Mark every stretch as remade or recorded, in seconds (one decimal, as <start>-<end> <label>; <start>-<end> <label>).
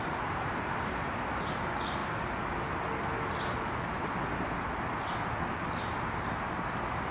0.0-2.0 remade; 2.0-5.8 recorded; 5.8-7.1 remade